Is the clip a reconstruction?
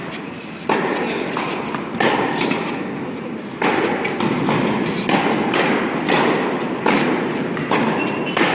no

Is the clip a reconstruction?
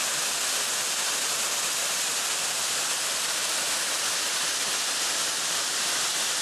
yes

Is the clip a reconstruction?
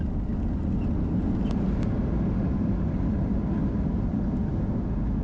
no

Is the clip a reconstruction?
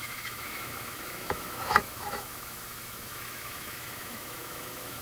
yes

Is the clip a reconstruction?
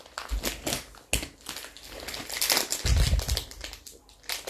no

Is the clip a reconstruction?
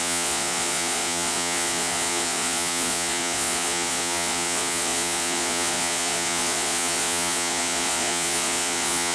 yes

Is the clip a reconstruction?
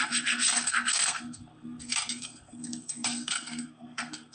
yes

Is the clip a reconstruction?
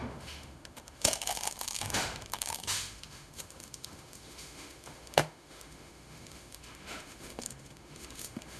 yes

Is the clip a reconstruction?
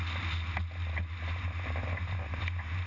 no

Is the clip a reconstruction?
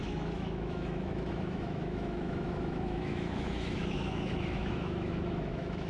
yes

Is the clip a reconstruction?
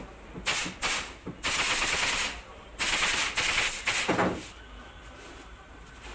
no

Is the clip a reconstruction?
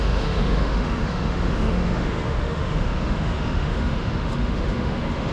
yes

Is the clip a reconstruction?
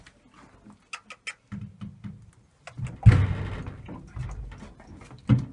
no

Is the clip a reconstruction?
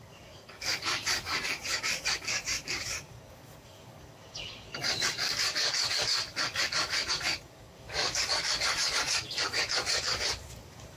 yes